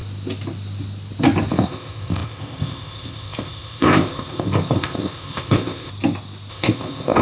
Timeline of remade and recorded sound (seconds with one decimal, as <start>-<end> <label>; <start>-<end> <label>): 0.0-1.5 recorded; 1.5-5.9 remade; 5.9-6.5 recorded; 6.5-7.2 remade